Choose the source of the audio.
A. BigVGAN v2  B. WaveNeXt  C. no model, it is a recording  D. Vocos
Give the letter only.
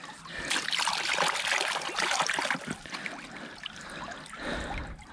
C